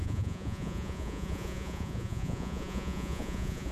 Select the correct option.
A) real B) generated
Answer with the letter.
B